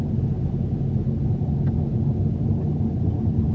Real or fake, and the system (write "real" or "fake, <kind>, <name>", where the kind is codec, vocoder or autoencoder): real